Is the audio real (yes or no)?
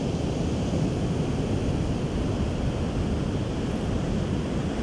yes